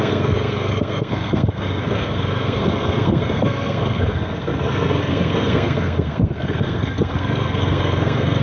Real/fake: fake